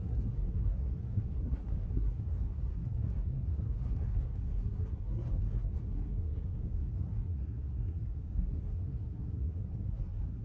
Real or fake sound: fake